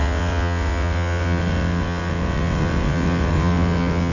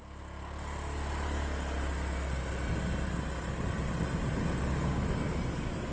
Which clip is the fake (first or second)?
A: first